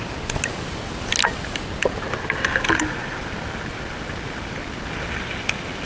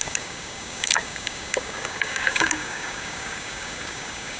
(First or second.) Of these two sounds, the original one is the first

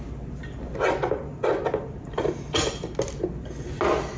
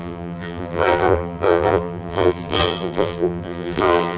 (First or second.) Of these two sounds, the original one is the first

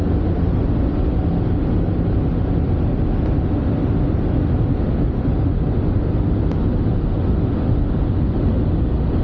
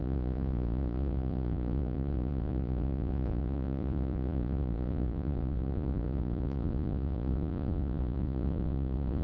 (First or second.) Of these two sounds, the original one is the first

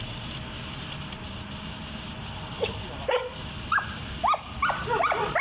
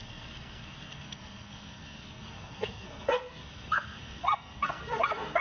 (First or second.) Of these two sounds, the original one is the first